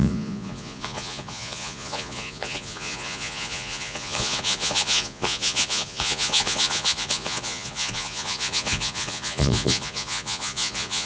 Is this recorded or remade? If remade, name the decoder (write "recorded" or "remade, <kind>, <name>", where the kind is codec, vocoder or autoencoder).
remade, vocoder, Vocos